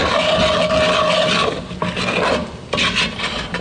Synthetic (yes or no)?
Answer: no